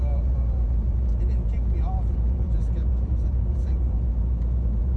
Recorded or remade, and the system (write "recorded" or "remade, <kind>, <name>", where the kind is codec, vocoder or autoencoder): remade, vocoder, Vocos